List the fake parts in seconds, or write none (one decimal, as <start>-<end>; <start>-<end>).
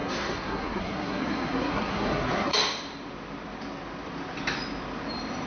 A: 0.0-2.5